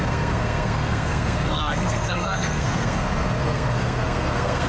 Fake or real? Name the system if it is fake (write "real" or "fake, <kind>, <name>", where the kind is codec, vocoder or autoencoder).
fake, codec, SNAC